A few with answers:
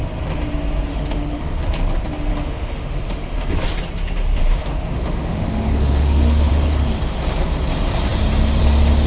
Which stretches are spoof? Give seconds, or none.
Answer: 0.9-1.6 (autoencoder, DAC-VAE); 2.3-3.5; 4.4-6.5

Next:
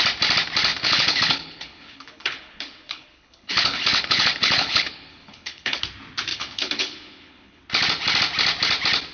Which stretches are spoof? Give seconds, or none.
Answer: 0.7-5.8 (codec, HILCodec); 6.3-7.6

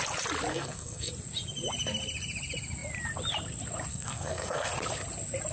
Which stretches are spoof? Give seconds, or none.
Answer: 0.5-1.1 (codec, SNAC); 3.9-4.7

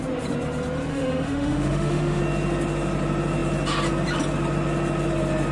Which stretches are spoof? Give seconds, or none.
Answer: 0.9-2.2 (autoencoder, DAC-VAE)

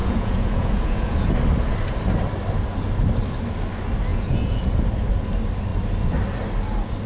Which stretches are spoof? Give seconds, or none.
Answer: 0.0-1.3 (vocoder, Vocos); 4.1-4.8

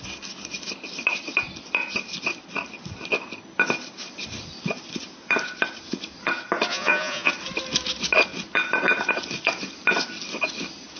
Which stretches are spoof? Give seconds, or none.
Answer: 6.7-7.3 (vocoder, Vocos)

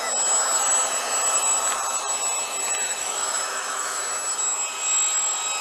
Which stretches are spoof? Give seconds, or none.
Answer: 3.0-4.0 (autoencoder, DAC-VAE)